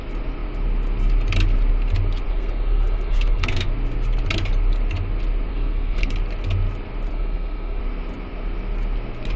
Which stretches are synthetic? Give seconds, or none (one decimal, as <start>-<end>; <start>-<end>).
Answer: 2.3-3.7; 5.5-6.1; 7.1-7.8